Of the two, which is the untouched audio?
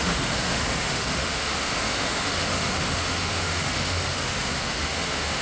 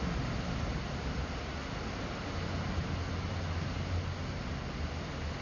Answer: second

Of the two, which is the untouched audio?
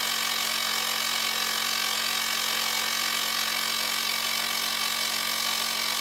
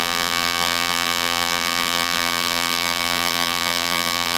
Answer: first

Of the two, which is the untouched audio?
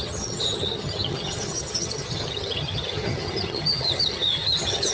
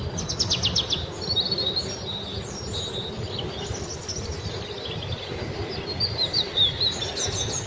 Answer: second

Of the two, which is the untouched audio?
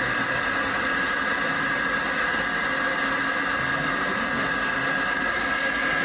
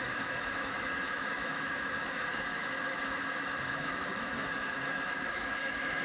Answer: first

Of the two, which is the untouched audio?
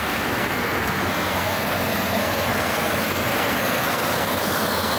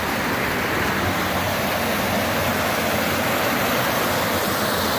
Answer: second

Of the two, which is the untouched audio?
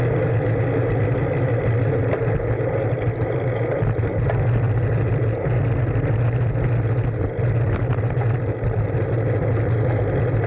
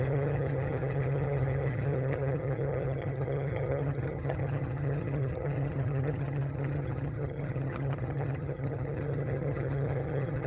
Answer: first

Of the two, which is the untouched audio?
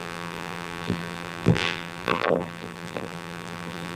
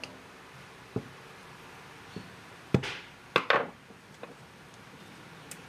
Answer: second